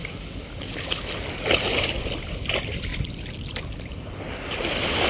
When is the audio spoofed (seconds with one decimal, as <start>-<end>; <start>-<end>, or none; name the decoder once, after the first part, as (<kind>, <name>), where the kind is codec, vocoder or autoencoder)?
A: none